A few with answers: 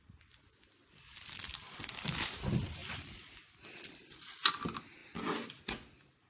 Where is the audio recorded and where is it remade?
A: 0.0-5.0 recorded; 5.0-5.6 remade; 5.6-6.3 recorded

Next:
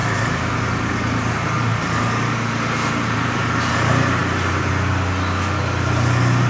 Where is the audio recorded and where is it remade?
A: 0.0-0.6 remade; 0.6-1.7 recorded; 1.7-3.7 remade; 3.7-4.2 recorded; 4.2-4.7 remade; 4.7-6.5 recorded